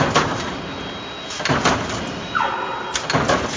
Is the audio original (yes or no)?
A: yes